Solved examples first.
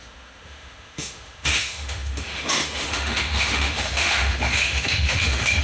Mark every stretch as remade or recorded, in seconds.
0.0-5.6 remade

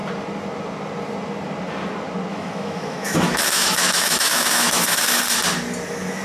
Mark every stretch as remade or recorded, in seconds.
0.0-2.3 recorded; 2.3-5.2 remade; 5.2-6.2 recorded

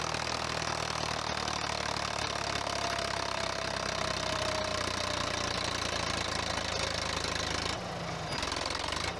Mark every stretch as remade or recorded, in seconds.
0.0-9.2 recorded

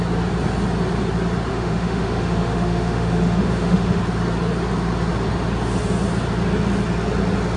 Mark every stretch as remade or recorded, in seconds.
0.0-1.5 recorded; 1.5-4.0 remade; 4.0-7.6 recorded

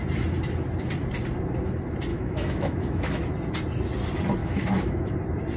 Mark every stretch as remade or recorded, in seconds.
0.0-2.1 recorded; 2.1-3.2 remade; 3.2-4.4 recorded; 4.4-5.1 remade; 5.1-5.6 recorded